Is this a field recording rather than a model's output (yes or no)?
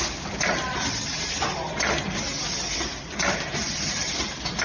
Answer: yes